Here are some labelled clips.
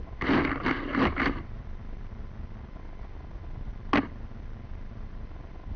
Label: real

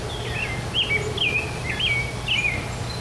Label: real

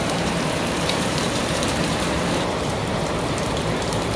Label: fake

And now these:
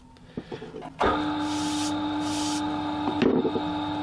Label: real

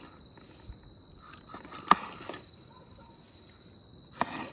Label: real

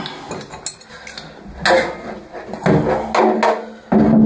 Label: real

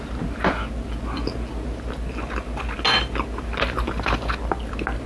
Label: real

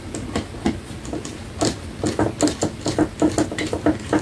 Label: real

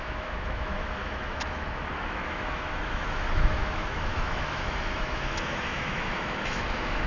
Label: fake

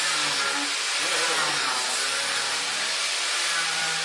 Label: real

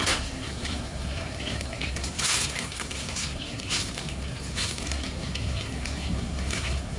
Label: fake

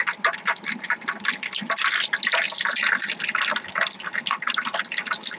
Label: real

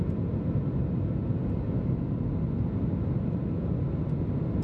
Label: real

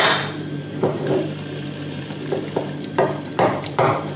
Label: fake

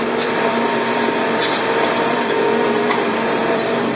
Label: fake